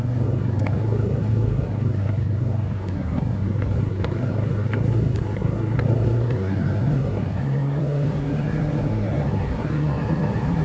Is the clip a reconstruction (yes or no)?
yes